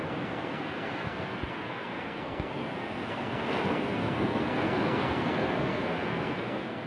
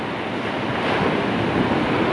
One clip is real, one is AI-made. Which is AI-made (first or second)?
first